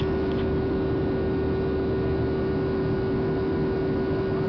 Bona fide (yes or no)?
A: yes